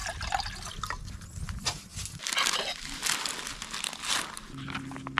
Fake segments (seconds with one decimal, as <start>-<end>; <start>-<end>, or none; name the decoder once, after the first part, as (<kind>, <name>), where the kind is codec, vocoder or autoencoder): none